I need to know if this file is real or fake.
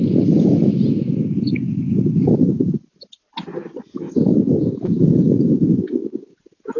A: real